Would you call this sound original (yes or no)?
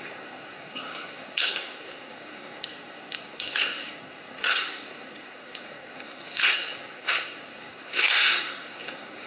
no